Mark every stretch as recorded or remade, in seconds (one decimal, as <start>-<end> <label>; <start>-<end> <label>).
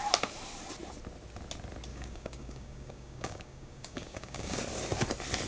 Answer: 0.0-1.9 recorded; 1.9-4.6 remade; 4.6-5.5 recorded